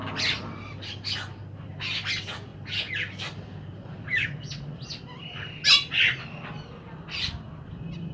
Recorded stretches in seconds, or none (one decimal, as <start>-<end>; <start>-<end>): 0.0-8.1